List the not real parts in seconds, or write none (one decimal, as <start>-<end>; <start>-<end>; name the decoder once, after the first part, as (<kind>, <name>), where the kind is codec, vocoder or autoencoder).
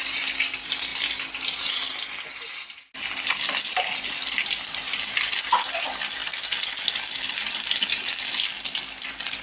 none